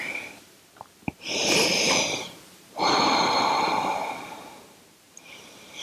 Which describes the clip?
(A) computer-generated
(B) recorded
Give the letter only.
A